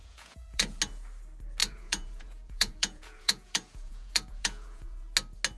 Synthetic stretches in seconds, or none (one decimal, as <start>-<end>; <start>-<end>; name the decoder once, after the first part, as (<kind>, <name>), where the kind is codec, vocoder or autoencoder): 0.0-0.8 (vocoder, Vocos); 1.6-5.0

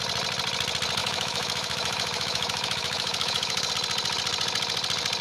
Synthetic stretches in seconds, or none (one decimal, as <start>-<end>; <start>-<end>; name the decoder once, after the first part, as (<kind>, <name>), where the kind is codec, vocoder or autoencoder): 1.0-3.7 (autoencoder, DAC-VAE)